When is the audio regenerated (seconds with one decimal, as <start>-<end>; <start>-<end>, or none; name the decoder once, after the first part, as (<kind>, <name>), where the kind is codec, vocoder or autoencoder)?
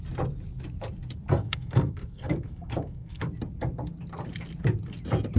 1.3-3.2 (codec, SNAC)